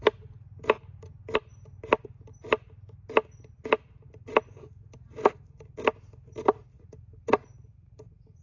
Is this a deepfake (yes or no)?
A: no